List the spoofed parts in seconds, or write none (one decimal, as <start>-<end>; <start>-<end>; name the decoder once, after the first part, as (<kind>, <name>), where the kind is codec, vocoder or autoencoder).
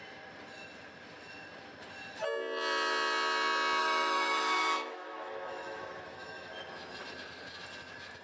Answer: 3.8-6.5 (autoencoder, DAC-VAE)